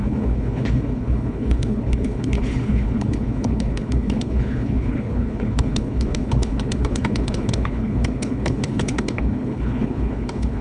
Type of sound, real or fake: fake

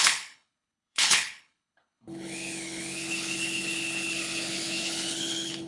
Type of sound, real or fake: fake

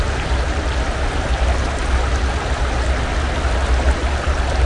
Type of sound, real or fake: real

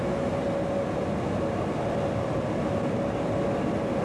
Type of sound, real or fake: real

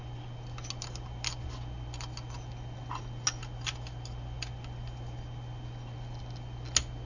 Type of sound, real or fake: real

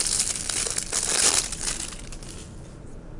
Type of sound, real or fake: real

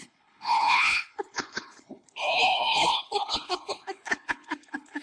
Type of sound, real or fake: fake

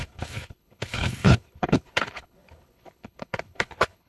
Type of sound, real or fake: fake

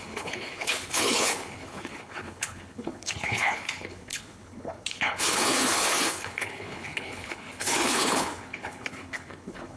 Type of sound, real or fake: fake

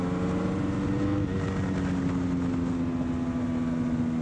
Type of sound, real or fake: real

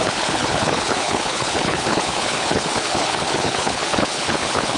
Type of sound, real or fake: fake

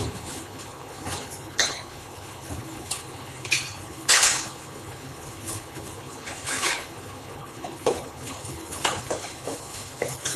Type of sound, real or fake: fake